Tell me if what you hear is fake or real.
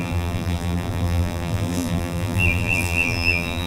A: fake